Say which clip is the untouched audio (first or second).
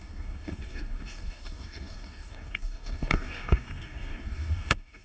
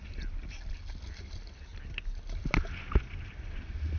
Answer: second